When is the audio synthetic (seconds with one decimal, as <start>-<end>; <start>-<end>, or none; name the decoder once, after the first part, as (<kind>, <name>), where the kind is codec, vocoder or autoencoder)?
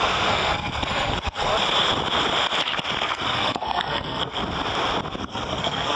0.0-1.5 (codec, SNAC); 3.0-4.4; 5.2-6.0